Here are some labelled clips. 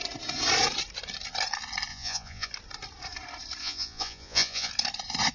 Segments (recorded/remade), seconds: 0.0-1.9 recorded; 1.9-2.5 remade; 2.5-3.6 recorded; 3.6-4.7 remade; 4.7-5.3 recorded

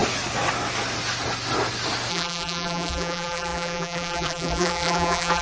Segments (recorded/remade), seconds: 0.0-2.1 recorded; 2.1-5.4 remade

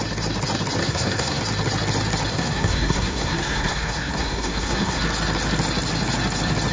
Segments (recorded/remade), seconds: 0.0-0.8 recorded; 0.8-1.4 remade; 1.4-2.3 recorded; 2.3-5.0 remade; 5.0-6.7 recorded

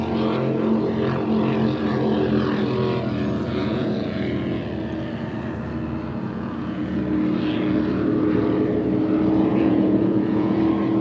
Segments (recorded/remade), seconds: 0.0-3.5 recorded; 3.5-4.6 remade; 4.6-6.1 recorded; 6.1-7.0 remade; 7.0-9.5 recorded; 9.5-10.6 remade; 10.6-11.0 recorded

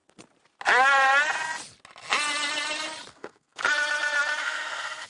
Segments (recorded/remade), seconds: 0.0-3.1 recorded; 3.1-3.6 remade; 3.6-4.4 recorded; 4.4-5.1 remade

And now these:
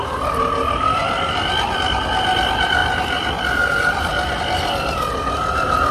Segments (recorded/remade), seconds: 0.0-5.9 recorded

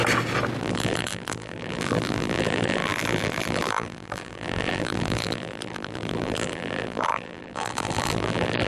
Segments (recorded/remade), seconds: 0.0-0.6 recorded; 0.6-8.7 remade

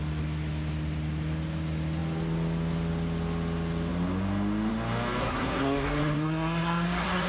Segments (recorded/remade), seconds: 0.0-5.2 recorded; 5.2-7.3 remade